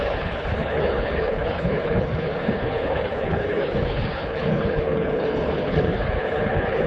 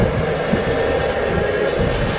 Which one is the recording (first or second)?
second